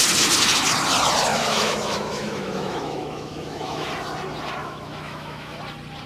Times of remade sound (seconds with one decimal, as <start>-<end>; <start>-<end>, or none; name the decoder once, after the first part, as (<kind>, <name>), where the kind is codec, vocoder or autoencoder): 1.3-3.9 (autoencoder, DAC-VAE); 4.6-5.6